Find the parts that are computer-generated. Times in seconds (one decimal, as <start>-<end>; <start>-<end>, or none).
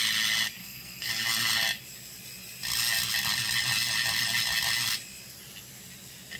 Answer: 0.6-1.1